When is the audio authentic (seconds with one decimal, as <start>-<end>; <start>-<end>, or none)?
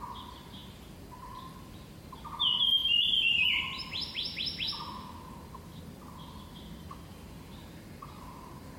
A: 0.0-2.8; 5.8-8.8